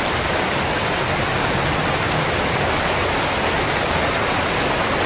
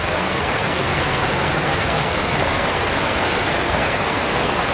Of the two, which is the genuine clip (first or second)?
first